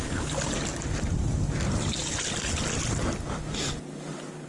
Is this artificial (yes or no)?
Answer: no